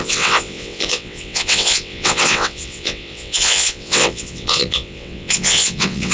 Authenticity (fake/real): fake